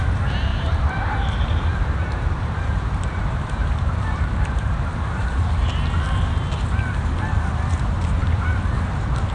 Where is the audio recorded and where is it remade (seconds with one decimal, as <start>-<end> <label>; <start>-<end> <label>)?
0.0-0.5 recorded; 0.5-5.5 remade; 5.5-9.3 recorded